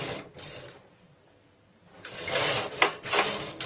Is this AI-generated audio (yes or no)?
no